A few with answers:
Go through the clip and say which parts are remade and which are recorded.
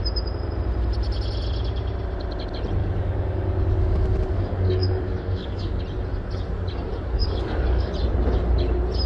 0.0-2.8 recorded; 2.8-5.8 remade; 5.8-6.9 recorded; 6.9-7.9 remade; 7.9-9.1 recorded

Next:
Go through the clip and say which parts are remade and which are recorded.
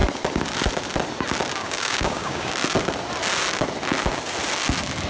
0.0-1.6 recorded; 1.6-2.5 remade; 2.5-5.1 recorded